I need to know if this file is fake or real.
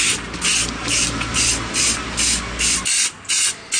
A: real